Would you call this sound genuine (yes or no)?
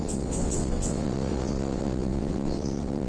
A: no